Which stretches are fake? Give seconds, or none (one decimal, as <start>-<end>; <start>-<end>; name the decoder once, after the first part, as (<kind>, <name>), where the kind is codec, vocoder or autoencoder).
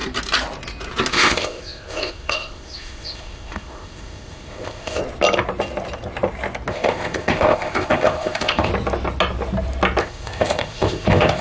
1.1-5.0 (codec, ZipCodec); 6.7-8.7; 10.0-11.4